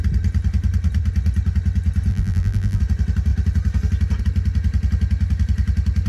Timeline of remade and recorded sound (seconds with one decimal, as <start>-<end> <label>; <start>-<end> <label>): 0.0-2.1 recorded; 2.1-2.8 remade; 2.8-6.1 recorded